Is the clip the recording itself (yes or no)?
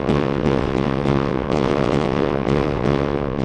no